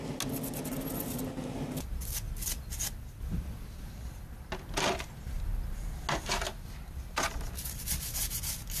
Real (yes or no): yes